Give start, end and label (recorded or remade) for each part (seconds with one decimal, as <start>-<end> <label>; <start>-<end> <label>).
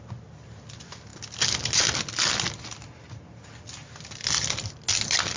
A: 0.0-5.4 recorded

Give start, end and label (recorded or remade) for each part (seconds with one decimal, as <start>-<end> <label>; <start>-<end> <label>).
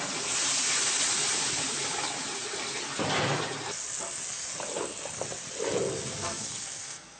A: 0.0-6.2 recorded; 6.2-7.2 remade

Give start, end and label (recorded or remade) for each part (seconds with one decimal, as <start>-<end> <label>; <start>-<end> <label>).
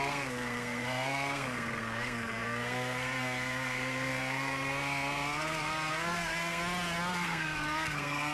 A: 0.0-6.6 remade; 6.6-7.1 recorded; 7.1-8.3 remade